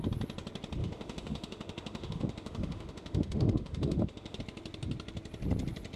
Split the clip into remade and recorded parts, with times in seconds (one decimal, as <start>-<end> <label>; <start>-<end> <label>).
0.0-0.8 recorded; 0.8-4.4 remade; 4.4-6.0 recorded